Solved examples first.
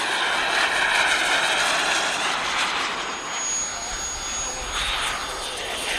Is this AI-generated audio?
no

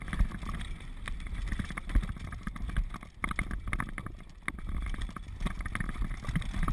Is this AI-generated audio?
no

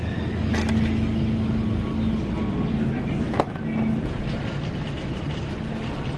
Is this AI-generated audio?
no